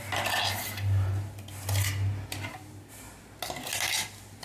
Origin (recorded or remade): recorded